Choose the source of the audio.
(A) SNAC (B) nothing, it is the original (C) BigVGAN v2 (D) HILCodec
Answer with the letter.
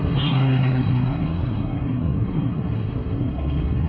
A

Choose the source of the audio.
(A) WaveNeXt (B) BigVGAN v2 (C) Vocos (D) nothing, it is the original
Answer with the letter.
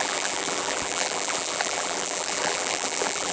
B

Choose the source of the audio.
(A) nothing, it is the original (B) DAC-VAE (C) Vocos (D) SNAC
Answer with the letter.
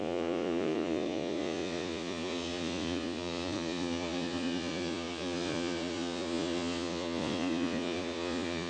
C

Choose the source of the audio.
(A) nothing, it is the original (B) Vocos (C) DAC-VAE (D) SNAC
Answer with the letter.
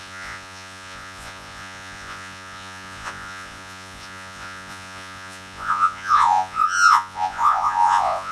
B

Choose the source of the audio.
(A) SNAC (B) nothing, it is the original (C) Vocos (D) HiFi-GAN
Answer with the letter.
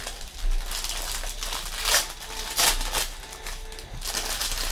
B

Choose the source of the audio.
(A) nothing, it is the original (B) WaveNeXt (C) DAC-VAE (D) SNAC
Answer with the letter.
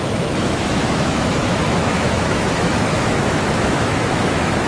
C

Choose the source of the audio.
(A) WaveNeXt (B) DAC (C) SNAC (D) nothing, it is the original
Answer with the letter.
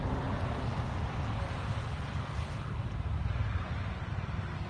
D